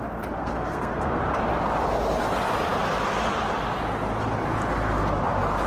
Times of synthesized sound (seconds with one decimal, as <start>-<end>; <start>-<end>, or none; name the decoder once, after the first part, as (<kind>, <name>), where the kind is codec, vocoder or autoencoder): 0.4-1.2 (codec, SNAC)